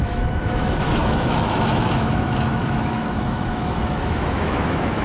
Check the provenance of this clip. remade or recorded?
remade